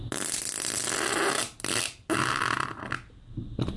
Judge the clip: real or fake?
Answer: real